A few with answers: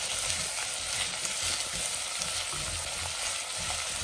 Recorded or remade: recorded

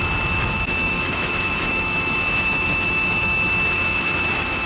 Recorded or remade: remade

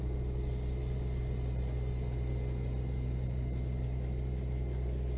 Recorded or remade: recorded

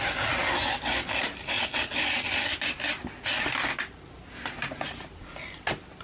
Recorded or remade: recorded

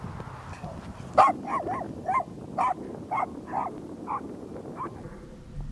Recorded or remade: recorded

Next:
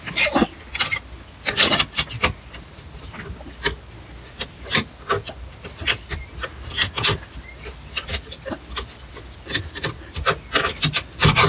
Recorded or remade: recorded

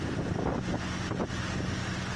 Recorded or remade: recorded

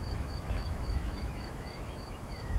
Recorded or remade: remade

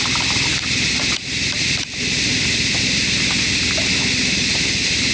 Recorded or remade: recorded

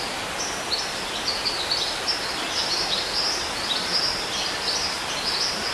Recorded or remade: recorded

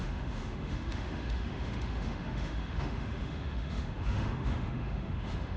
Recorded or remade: remade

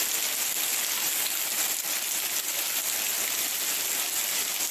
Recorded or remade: recorded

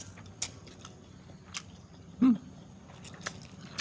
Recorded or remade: recorded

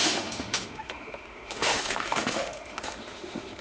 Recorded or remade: remade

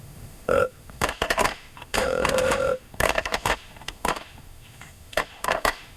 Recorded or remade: remade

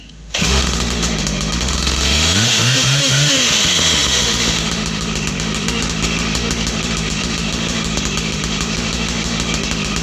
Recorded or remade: remade